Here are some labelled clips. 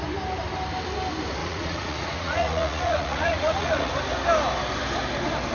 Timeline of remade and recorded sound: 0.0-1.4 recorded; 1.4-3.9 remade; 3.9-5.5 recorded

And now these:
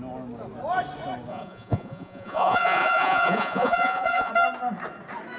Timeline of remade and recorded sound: 0.0-1.3 recorded; 1.3-4.3 remade; 4.3-5.4 recorded

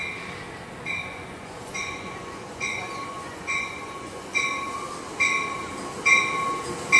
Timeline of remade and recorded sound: 0.0-1.0 recorded; 1.0-4.7 remade; 4.7-7.0 recorded

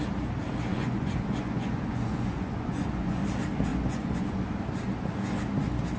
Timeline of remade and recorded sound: 0.0-0.7 recorded; 0.7-3.2 remade; 3.2-3.7 recorded; 3.7-4.4 remade; 4.4-6.0 recorded

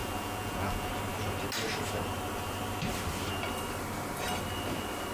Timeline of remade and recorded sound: 0.0-0.9 remade; 0.9-5.1 recorded